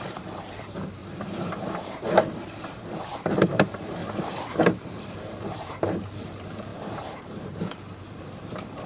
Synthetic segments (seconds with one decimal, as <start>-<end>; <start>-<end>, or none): 0.0-1.0; 2.0-4.0; 4.6-8.9